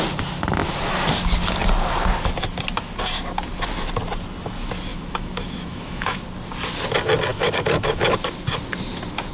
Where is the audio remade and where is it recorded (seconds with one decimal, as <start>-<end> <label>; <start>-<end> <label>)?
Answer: 0.0-4.9 recorded; 4.9-6.2 remade; 6.2-7.3 recorded; 7.3-8.1 remade; 8.1-9.3 recorded